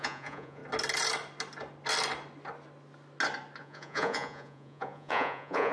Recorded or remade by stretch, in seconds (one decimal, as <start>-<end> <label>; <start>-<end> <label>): 0.0-0.6 remade; 0.6-3.6 recorded; 3.6-5.7 remade

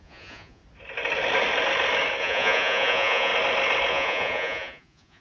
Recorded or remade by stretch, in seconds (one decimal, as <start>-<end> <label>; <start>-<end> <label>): 0.0-0.6 remade; 0.6-2.2 recorded; 2.2-3.3 remade; 3.3-3.9 recorded; 3.9-5.2 remade